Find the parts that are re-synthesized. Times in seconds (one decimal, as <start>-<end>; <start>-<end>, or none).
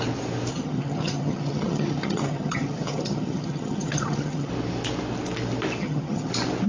0.5-4.5; 5.8-6.3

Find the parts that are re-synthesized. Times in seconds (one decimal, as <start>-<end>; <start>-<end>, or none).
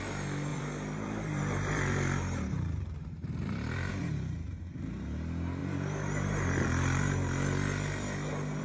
0.5-3.9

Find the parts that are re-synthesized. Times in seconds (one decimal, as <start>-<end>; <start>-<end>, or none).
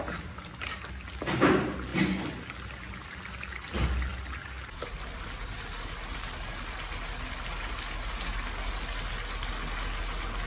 none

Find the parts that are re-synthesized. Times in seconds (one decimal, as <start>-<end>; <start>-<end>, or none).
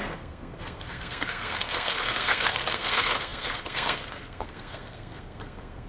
0.0-5.9